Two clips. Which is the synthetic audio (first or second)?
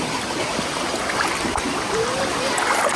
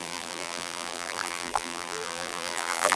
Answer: second